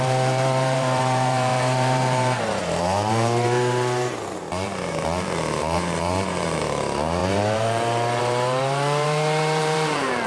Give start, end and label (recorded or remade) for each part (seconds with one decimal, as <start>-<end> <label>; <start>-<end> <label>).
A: 0.0-10.3 remade